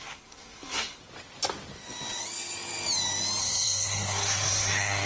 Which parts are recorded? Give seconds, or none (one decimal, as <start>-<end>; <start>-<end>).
1.0-3.4